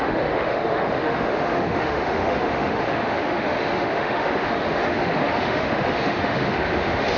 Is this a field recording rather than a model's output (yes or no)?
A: no